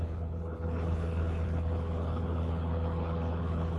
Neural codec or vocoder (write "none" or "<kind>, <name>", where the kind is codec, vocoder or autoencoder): codec, HILCodec